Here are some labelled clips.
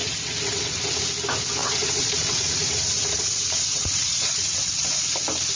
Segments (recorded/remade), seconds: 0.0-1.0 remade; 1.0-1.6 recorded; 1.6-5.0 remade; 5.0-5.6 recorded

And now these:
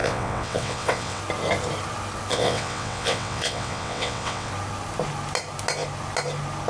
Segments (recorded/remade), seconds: 0.0-1.2 remade; 1.2-2.3 recorded; 2.3-4.5 remade; 4.5-6.7 recorded

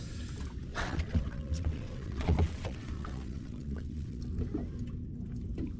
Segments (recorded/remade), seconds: 0.0-0.7 recorded; 0.7-4.2 remade; 4.2-5.8 recorded

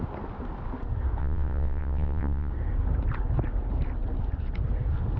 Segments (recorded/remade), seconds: 0.0-1.2 recorded; 1.2-2.5 remade; 2.5-5.2 recorded

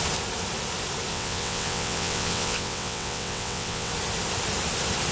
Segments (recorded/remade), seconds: 0.0-1.1 recorded; 1.1-3.9 remade; 3.9-5.1 recorded

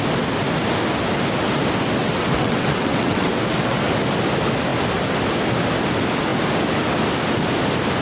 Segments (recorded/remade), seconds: 0.0-2.0 recorded; 2.0-3.8 remade; 3.8-8.0 recorded

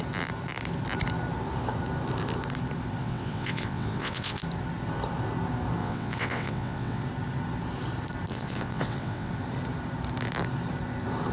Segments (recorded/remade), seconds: 0.0-3.0 recorded; 3.0-4.4 remade; 4.4-5.8 recorded; 5.8-7.0 remade; 7.0-8.3 recorded; 8.3-9.3 remade; 9.3-11.3 recorded